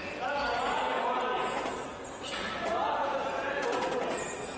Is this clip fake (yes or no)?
yes